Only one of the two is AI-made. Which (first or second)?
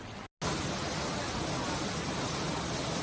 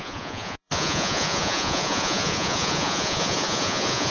second